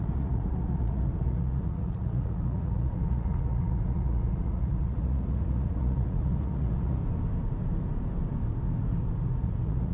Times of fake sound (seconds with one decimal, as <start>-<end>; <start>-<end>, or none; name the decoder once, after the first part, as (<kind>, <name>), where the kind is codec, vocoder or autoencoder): 0.0-7.0 (vocoder, Vocos); 9.4-9.9